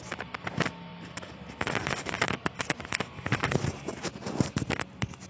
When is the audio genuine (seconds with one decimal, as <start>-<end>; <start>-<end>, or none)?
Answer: 0.0-0.9; 4.1-5.3